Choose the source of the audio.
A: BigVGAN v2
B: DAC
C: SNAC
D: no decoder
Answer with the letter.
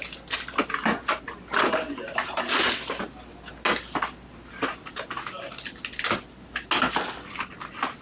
D